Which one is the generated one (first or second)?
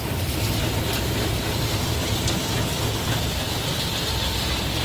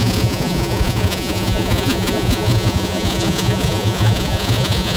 second